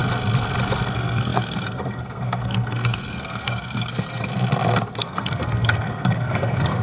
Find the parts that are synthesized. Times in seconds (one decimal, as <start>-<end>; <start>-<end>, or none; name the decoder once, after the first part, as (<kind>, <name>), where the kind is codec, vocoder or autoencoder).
0.9-4.3 (codec, SNAC); 5.0-6.8